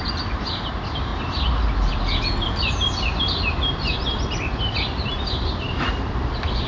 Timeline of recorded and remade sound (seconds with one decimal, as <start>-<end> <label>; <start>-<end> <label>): 0.0-1.1 remade; 1.1-5.1 recorded; 5.1-6.7 remade